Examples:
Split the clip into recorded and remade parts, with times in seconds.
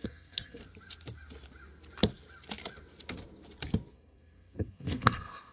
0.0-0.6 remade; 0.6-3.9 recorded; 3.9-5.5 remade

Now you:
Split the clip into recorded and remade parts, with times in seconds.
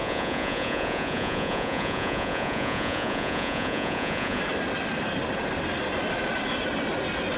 0.0-4.4 remade; 4.4-7.4 recorded